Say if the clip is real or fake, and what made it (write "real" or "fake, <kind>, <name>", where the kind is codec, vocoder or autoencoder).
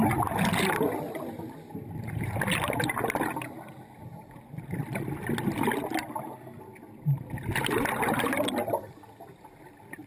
real